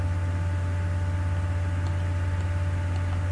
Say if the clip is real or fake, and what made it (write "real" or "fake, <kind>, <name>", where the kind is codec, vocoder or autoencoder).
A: real